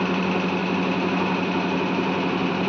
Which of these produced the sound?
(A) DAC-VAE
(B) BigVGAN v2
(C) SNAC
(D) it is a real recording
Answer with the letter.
D